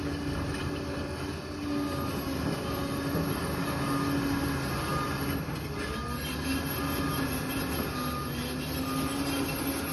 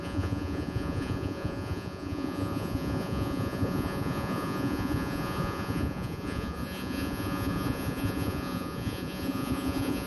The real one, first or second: first